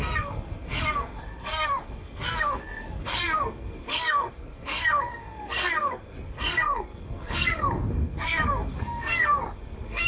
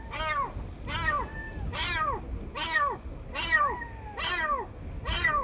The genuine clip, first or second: second